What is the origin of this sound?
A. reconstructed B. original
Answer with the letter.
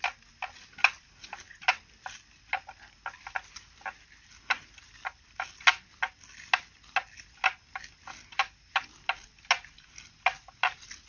B